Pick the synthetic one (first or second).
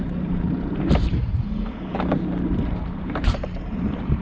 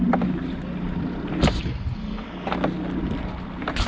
first